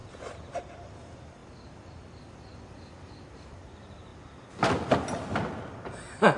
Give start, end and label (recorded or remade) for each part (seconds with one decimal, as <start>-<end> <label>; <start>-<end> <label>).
0.0-1.4 remade; 1.4-3.3 recorded; 3.3-4.1 remade; 4.1-5.7 recorded; 5.7-6.4 remade